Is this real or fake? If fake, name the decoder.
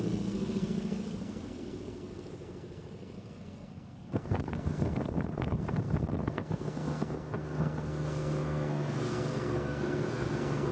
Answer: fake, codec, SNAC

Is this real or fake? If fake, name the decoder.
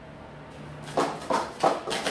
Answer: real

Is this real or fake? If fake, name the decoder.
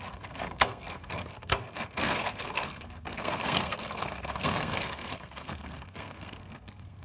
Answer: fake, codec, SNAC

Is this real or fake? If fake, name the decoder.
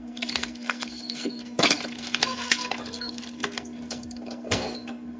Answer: fake, codec, SNAC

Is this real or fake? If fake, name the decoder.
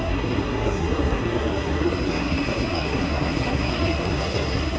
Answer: fake, codec, SNAC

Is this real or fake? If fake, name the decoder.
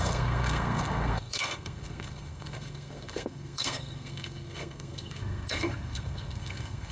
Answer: fake, codec, SNAC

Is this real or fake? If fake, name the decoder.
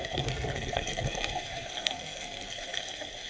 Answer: fake, codec, SNAC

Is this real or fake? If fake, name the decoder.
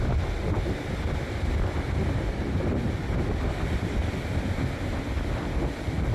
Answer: real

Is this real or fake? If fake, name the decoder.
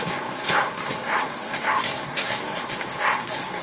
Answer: fake, codec, SNAC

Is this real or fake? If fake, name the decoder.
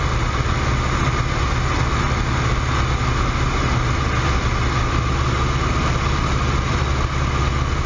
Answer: real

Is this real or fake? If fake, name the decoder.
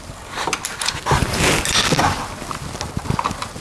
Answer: real